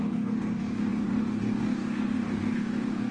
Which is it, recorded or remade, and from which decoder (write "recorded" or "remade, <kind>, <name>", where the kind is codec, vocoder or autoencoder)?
remade, codec, DAC